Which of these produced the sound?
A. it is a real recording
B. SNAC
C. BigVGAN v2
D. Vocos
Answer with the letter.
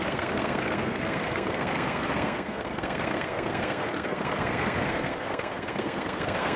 B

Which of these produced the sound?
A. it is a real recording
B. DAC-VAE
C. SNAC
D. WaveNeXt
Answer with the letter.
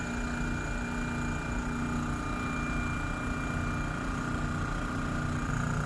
A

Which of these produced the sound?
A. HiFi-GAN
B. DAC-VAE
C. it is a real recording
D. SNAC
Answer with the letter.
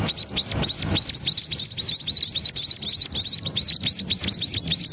C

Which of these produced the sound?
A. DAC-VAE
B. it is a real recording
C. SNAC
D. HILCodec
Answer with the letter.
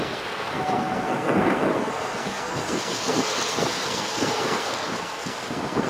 C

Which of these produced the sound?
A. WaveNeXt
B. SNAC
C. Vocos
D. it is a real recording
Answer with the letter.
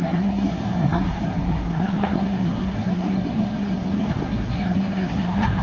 B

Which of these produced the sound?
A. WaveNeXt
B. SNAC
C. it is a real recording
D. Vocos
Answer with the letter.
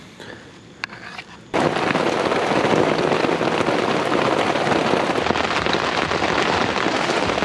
C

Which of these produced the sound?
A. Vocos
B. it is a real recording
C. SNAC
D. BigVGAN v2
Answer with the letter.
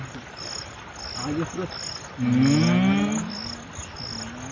B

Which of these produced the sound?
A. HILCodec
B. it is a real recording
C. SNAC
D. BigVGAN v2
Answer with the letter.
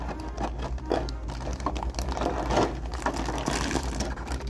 B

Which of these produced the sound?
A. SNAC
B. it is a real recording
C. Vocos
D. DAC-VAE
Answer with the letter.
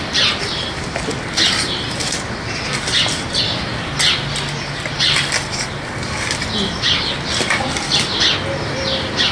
B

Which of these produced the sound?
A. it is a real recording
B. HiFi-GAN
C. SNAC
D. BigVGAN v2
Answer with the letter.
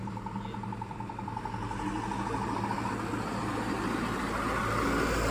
A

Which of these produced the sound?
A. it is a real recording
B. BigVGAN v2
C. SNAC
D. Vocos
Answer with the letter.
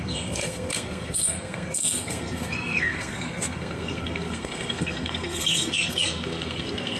C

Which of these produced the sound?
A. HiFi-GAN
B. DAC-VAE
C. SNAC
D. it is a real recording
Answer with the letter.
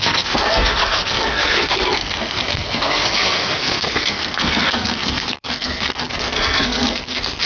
C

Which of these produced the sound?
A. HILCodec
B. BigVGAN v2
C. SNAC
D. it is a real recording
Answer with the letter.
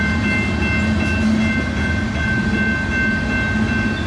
D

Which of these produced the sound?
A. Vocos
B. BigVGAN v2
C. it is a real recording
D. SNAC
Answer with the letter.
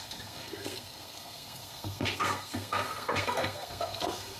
D